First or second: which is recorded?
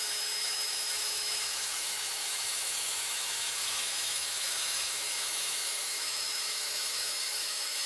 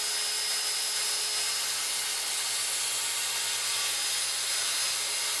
second